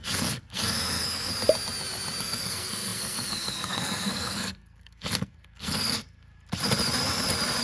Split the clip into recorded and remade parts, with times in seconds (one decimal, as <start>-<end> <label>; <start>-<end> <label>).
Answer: 0.0-1.3 remade; 1.3-2.2 recorded; 2.2-6.3 remade; 6.3-7.6 recorded